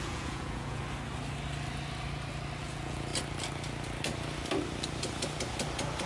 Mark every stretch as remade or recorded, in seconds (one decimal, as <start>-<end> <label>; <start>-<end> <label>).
0.0-0.8 remade; 0.8-2.6 recorded; 2.6-3.1 remade; 3.1-6.1 recorded